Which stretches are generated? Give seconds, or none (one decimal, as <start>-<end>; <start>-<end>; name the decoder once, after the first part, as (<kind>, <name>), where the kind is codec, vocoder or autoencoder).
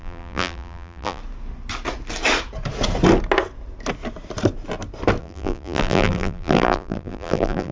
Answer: 0.0-1.2 (vocoder, BigVGAN v2); 5.2-7.7